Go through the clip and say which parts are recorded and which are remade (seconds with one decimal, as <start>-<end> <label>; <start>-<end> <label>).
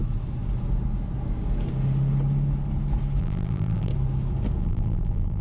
0.0-3.2 recorded; 3.2-3.9 remade; 3.9-4.6 recorded; 4.6-5.4 remade